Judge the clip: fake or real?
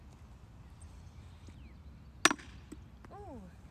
real